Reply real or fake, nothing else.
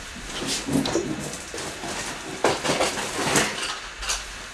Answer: real